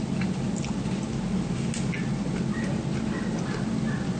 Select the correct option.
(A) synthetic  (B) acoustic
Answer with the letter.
B